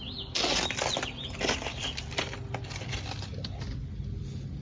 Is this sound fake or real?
real